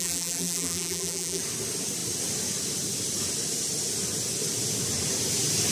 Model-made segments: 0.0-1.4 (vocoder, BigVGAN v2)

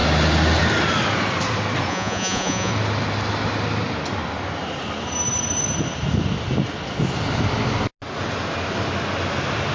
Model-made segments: 1.9-2.7 (vocoder, Vocos)

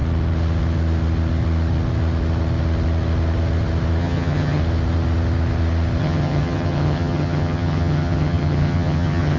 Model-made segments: 4.0-4.6 (vocoder, HiFi-GAN); 6.0-9.4